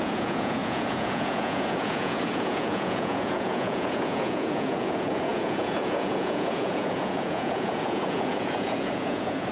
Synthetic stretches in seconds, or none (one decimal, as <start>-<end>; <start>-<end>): 0.0-9.5